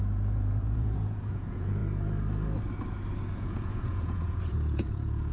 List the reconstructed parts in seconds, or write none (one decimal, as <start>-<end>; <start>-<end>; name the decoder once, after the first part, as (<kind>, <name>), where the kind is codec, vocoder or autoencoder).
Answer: 0.0-1.8 (vocoder, Vocos); 3.3-5.3